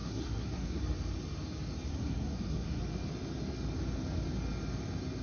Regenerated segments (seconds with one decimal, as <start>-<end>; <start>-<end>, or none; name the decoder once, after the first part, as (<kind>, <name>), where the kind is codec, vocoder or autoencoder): 0.0-0.8 (codec, SNAC); 1.9-2.8